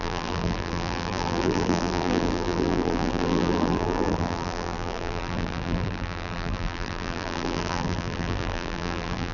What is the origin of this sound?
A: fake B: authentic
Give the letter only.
A